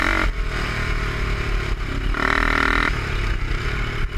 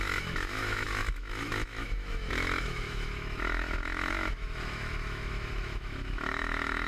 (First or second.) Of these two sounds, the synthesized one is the second